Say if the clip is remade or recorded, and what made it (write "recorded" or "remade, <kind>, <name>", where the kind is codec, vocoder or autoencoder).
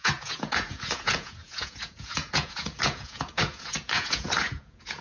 remade, vocoder, Vocos